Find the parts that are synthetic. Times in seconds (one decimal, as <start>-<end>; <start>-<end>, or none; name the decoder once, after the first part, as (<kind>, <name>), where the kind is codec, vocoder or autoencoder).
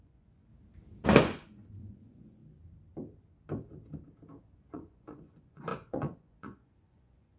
0.0-0.5 (vocoder, Vocos); 1.1-2.4; 4.4-7.4